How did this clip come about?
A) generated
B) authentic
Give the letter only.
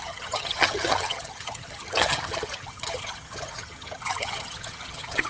A